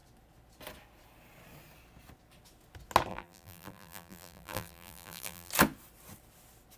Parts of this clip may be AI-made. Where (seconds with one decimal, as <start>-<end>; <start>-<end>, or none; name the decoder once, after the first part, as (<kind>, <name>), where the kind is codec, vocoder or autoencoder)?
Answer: 3.1-5.5 (vocoder, BigVGAN v2)